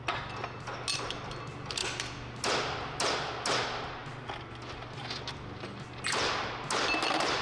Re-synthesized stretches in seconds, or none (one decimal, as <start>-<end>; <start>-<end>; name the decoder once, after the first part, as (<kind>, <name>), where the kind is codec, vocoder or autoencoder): none